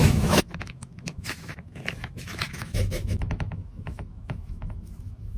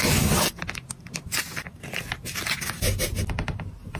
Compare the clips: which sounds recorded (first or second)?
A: second